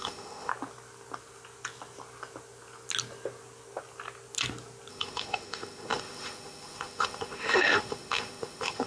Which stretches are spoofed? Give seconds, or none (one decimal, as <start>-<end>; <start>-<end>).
0.0-0.5; 4.9-8.9